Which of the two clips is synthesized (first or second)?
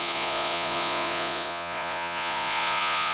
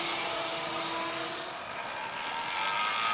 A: first